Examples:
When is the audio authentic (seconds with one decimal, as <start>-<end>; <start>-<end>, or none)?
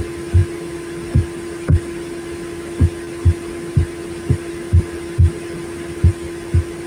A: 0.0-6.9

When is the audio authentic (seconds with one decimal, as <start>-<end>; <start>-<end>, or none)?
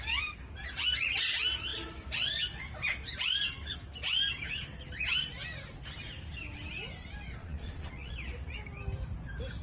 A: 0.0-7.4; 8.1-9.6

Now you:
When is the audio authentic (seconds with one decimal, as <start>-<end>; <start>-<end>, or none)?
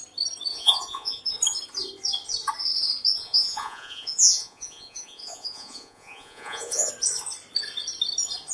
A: 0.0-0.5; 1.2-3.2; 6.9-8.5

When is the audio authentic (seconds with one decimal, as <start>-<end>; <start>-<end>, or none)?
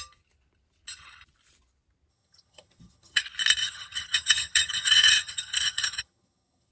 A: 0.0-2.1; 3.2-3.6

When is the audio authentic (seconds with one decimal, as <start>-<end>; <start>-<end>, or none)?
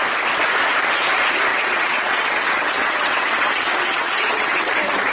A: 0.0-1.5; 4.6-5.1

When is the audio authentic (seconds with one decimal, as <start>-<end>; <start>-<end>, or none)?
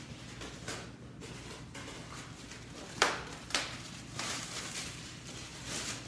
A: 0.0-6.1